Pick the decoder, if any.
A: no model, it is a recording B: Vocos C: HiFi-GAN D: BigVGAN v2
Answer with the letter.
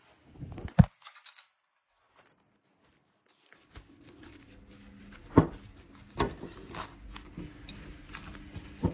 A